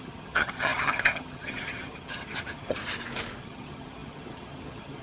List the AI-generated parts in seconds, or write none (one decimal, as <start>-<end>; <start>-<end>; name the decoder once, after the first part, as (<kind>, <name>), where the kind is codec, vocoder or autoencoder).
0.0-2.8 (vocoder, HiFi-GAN); 3.4-5.0